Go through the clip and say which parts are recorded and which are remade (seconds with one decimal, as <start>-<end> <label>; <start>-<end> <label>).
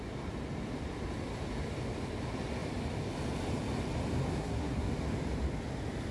0.0-4.3 recorded; 4.3-4.9 remade; 4.9-6.1 recorded